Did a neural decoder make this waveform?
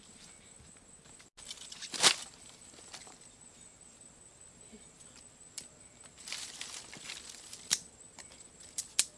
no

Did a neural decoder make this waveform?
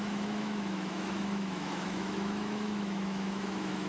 yes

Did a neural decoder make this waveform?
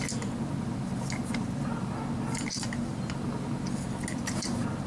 no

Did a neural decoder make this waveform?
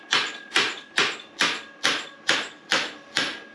yes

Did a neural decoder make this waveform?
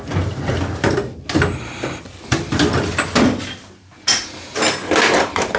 no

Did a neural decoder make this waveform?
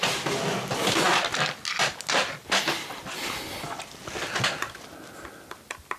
no